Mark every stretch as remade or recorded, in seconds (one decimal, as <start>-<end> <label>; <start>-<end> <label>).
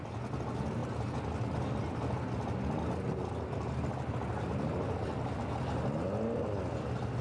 0.0-7.2 recorded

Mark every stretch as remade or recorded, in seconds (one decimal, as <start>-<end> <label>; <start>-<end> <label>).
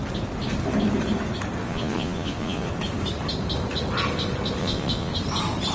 0.0-1.6 recorded; 1.6-2.7 remade; 2.7-4.6 recorded; 4.6-5.1 remade; 5.1-5.7 recorded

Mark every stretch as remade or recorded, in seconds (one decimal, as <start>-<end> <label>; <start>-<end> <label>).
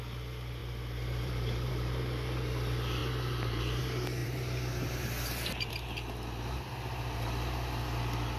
0.0-0.6 recorded; 0.6-1.7 remade; 1.7-3.0 recorded; 3.0-3.8 remade; 3.8-4.2 recorded; 4.2-5.7 remade; 5.7-8.4 recorded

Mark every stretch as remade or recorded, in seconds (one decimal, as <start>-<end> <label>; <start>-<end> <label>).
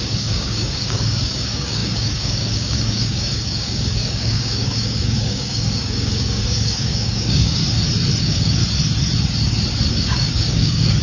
0.0-7.6 remade; 7.6-8.2 recorded; 8.2-8.6 remade; 8.6-9.9 recorded; 9.9-11.0 remade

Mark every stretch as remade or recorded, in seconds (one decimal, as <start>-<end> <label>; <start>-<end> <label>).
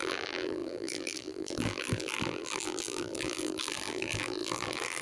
0.0-5.0 remade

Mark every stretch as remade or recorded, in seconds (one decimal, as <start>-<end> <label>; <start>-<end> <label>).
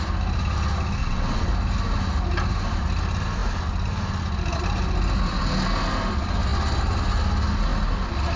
0.0-1.0 recorded; 1.0-1.5 remade; 1.5-8.4 recorded